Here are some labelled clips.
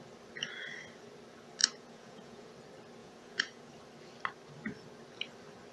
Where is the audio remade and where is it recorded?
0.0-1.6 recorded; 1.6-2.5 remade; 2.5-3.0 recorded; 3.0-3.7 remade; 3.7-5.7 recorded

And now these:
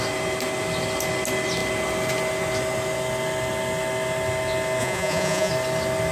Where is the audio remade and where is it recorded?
0.0-4.8 recorded; 4.8-5.5 remade; 5.5-6.1 recorded

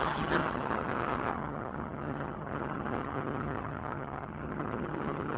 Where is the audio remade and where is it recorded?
0.0-5.4 remade

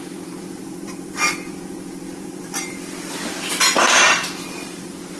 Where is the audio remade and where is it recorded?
0.0-5.2 remade

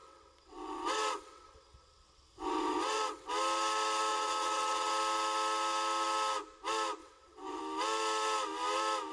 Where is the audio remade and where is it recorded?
0.0-3.3 remade; 3.3-4.1 recorded; 4.1-4.9 remade; 4.9-7.0 recorded; 7.0-7.6 remade; 7.6-9.1 recorded

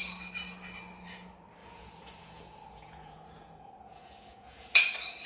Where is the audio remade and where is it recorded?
0.0-1.6 recorded; 1.6-4.8 remade; 4.8-5.3 recorded

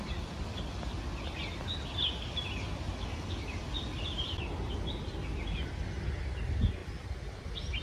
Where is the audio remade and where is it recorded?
0.0-7.8 recorded